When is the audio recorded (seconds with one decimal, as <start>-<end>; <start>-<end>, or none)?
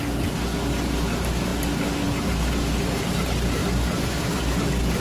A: 0.0-3.6; 4.4-5.0